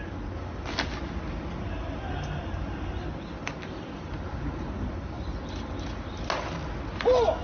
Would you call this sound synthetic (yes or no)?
no